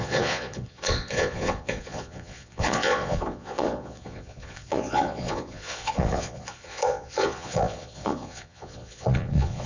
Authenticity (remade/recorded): remade